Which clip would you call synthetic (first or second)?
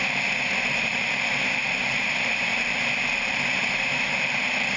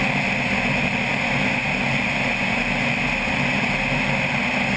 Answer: first